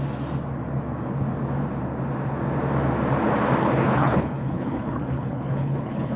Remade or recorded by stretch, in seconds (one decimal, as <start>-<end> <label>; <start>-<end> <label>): 0.0-3.6 recorded; 3.6-6.2 remade